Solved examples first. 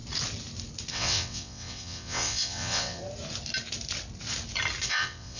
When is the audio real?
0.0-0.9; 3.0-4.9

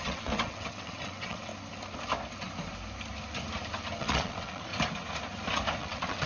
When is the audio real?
1.5-4.0; 4.7-5.8

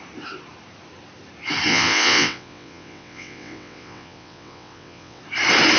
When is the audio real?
0.0-1.7; 5.2-5.8

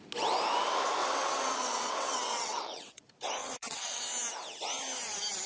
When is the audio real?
0.0-1.0; 3.0-3.4; 4.0-5.5

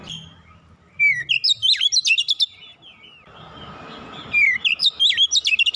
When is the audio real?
0.0-5.8

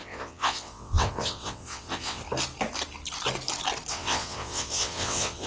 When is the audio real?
2.2-3.9